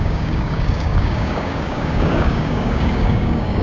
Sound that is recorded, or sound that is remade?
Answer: remade